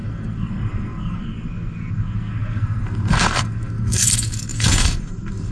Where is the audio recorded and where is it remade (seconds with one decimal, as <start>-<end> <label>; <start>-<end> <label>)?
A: 0.0-5.5 remade